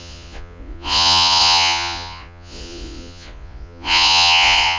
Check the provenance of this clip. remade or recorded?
remade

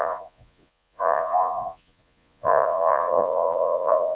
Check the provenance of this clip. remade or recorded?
remade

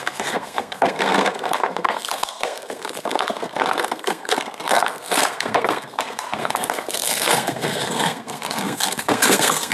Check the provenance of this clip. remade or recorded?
remade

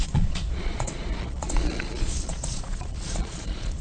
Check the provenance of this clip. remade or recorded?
remade